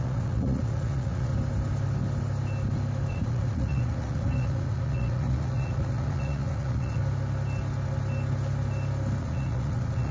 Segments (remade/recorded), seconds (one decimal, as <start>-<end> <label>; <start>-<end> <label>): 0.0-1.3 remade; 1.3-3.1 recorded; 3.1-7.0 remade; 7.0-9.2 recorded; 9.2-10.1 remade